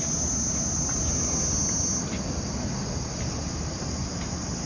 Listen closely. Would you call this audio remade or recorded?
recorded